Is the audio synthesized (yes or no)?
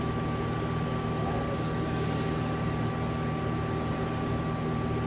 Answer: no